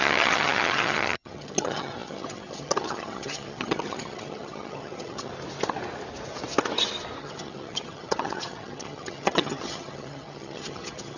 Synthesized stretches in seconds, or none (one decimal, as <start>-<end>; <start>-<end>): 0.0-5.3; 7.2-11.2